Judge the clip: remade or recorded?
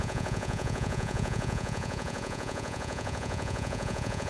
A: remade